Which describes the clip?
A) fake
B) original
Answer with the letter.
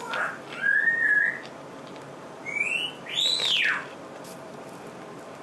B